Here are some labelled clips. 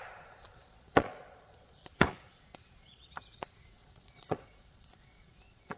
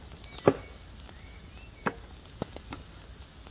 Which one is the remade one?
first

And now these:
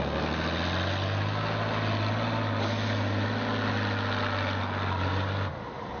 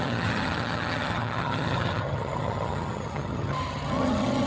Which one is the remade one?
second